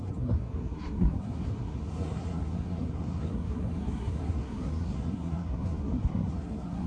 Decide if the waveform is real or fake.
fake